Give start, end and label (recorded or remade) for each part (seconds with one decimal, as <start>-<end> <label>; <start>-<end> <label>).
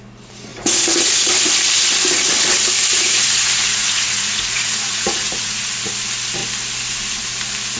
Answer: 0.0-0.5 recorded; 0.5-1.3 remade; 1.3-2.9 recorded; 2.9-5.6 remade; 5.6-7.8 recorded